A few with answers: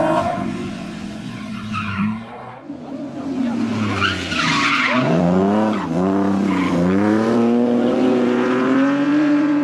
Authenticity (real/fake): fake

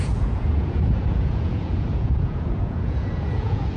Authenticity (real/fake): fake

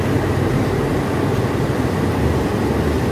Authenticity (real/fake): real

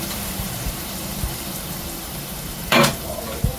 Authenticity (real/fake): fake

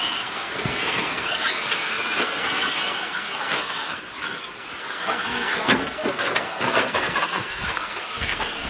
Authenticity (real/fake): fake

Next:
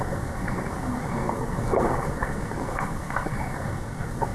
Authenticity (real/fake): fake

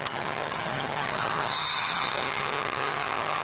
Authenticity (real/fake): fake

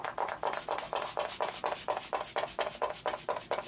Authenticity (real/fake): real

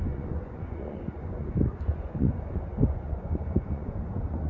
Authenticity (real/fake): fake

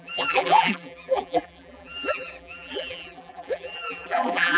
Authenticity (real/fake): fake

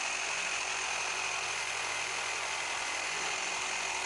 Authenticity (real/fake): fake